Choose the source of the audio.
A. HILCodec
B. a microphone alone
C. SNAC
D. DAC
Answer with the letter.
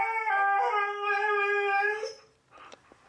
B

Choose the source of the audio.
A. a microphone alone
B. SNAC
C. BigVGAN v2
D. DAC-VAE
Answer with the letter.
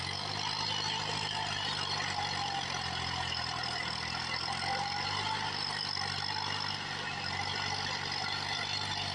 A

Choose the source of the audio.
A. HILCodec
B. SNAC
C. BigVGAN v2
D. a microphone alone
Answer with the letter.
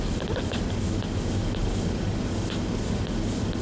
D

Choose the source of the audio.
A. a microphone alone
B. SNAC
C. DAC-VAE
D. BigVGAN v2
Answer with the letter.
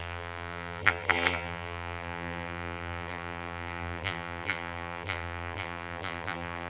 D